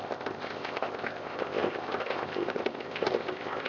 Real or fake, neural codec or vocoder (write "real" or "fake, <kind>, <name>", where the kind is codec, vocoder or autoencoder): fake, codec, ZipCodec